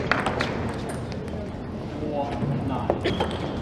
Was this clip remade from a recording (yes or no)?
no